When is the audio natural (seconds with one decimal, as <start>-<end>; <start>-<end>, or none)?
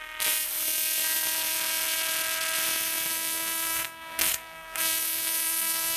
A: 0.0-3.1